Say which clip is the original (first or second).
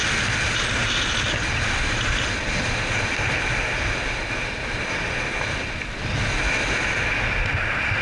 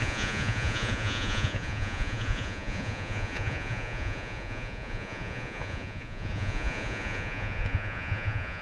first